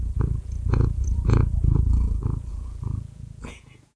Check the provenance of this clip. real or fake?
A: fake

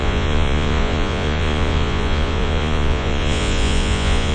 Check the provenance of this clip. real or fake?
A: fake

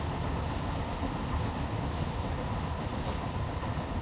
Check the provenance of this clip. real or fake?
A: real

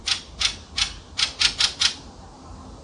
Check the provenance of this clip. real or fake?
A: real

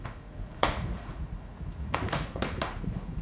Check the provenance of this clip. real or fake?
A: fake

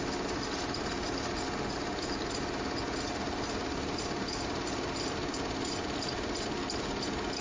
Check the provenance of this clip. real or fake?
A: real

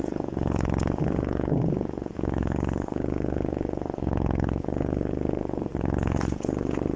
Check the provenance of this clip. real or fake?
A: fake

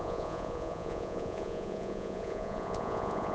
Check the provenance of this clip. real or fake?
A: fake